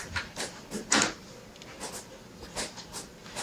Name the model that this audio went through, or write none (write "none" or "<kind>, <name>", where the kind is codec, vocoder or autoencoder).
none